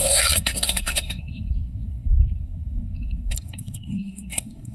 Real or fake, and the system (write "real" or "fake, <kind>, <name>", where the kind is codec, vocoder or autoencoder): fake, codec, SNAC